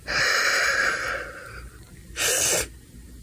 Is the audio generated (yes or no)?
no